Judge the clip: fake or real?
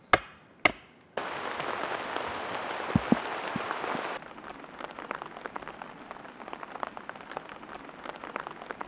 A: real